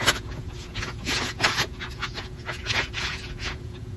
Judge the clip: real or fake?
fake